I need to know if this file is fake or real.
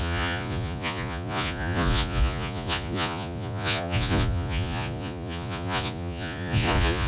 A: fake